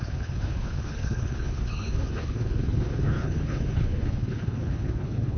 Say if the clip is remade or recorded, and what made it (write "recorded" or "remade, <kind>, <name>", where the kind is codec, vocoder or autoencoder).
remade, codec, HILCodec